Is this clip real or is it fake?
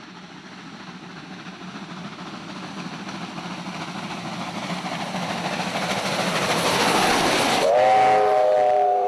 real